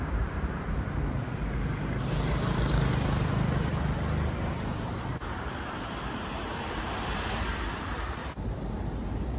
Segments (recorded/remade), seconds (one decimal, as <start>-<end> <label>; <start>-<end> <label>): 0.0-3.7 remade; 3.7-4.5 recorded; 4.5-8.2 remade; 8.2-9.4 recorded